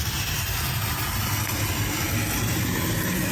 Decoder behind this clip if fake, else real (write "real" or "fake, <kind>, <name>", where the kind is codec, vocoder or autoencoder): real